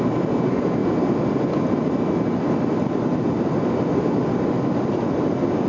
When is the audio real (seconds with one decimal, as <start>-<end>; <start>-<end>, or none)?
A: 0.0-5.7